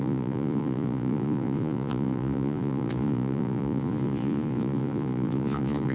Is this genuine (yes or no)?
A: no